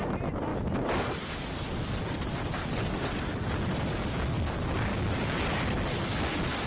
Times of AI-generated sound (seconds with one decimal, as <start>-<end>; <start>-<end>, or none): 4.9-5.4

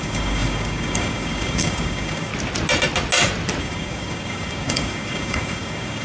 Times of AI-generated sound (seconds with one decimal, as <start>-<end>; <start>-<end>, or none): 0.0-2.3; 3.6-6.0

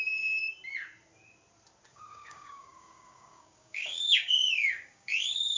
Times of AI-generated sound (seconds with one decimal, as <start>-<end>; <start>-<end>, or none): 0.0-0.4; 1.9-5.6

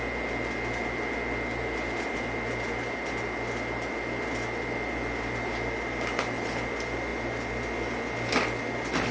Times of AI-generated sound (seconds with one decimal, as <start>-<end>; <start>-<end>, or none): none

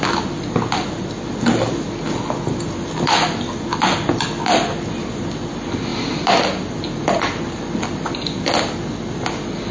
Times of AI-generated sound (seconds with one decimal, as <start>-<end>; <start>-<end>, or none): none

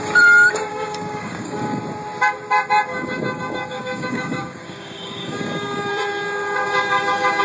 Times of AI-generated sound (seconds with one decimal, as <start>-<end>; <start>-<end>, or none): 0.7-1.8; 2.9-5.9; 6.6-7.4